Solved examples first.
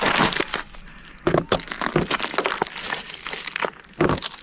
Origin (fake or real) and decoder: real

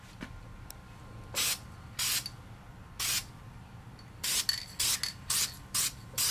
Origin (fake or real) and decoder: real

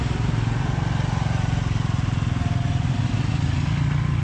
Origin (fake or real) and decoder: real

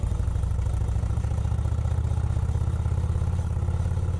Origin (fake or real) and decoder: real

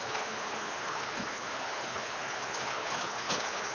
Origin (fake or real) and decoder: fake, codec, HILCodec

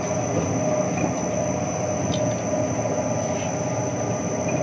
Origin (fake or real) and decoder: real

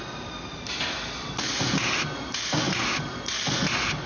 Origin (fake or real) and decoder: real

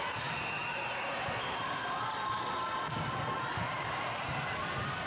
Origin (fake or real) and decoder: real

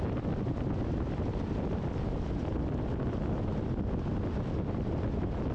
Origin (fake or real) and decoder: real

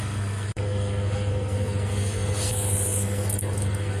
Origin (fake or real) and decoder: fake, codec, SNAC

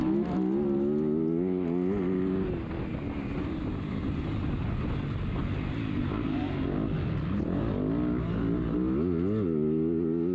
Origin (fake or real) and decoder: real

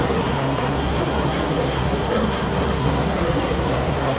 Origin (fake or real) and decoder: fake, codec, SNAC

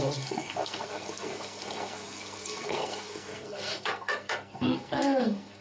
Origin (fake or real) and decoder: fake, codec, SNAC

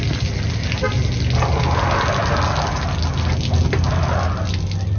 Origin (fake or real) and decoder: real